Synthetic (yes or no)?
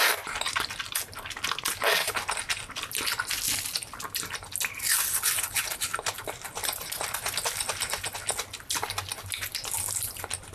no